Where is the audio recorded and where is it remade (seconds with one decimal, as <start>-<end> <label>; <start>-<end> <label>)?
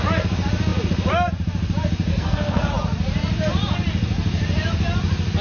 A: 0.0-2.1 recorded; 2.1-2.7 remade; 2.7-5.4 recorded